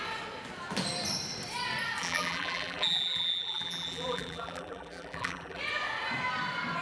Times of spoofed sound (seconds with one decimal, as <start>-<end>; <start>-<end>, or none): 2.0-5.6